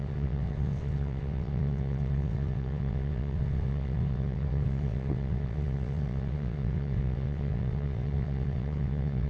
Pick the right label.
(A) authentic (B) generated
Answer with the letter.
B